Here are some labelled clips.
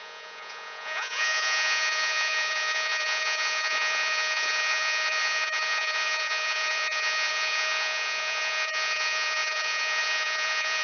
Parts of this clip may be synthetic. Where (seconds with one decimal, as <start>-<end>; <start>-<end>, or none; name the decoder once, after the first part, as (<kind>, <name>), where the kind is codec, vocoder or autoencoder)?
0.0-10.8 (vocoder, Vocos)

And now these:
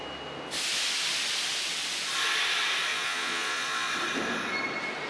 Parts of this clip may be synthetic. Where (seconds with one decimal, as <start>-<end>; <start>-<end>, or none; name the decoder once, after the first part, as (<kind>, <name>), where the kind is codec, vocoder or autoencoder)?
2.9-3.9 (vocoder, Vocos)

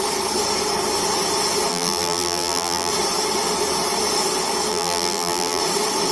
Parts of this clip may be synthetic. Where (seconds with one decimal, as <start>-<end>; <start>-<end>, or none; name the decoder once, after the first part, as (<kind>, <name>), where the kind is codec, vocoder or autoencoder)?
1.7-2.9 (vocoder, BigVGAN v2); 4.7-5.6